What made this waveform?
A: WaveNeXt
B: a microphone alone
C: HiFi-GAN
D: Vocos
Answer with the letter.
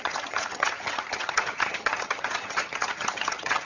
C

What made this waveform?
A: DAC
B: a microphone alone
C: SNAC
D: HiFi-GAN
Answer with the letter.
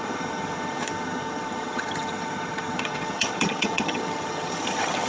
D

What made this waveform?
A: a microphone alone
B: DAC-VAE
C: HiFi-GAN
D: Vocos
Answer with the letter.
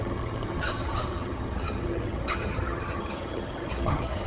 C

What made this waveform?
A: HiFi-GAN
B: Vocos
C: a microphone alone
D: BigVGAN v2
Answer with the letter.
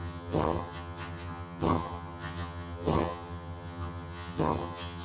A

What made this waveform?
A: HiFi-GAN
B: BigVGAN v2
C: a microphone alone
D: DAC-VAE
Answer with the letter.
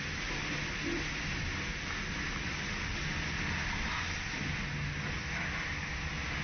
C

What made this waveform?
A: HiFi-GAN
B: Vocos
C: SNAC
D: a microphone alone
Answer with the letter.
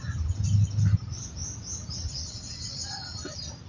D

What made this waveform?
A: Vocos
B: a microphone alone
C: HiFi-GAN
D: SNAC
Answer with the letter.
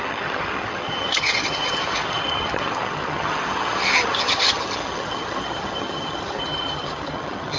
C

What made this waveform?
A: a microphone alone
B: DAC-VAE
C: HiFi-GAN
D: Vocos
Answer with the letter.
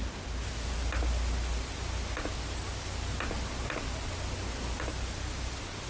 A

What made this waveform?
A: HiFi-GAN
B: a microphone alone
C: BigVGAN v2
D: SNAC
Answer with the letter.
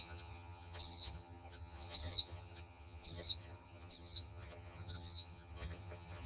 A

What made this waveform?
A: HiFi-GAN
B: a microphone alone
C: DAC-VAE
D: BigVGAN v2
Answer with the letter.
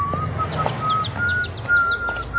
B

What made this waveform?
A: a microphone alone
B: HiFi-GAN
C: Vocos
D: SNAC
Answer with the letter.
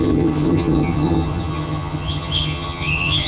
B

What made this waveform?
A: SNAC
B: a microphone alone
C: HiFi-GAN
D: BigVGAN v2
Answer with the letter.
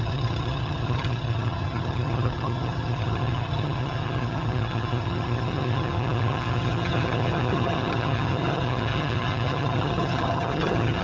C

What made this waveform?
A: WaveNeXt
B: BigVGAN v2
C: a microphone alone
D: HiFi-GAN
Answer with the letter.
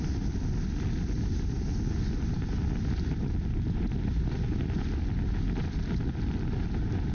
C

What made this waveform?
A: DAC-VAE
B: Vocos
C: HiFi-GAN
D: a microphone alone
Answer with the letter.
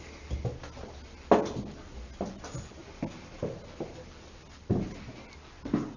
D